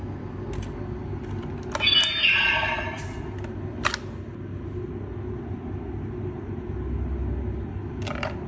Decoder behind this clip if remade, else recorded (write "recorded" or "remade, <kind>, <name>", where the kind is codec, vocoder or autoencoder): recorded